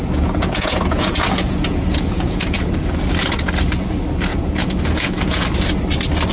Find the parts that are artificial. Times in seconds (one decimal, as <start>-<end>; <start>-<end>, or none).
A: 0.0-3.0; 4.3-5.5